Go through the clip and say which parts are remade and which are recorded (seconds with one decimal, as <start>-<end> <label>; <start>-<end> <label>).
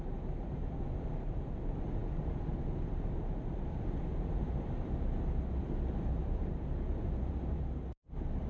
0.0-6.2 recorded; 6.2-6.7 remade; 6.7-8.5 recorded